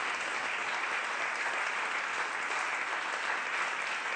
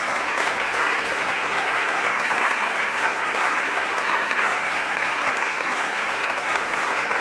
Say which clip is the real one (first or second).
first